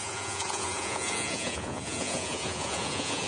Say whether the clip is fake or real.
fake